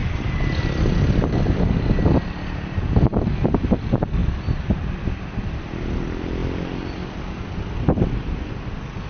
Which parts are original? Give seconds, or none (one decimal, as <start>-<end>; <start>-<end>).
0.0-9.1